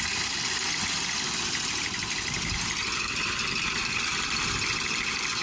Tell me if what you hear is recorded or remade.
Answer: remade